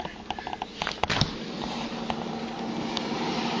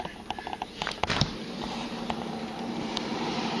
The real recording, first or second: first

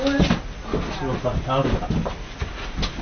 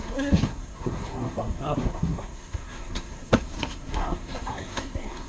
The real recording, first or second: first